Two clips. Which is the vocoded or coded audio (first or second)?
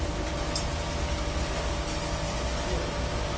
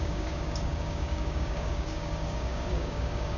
second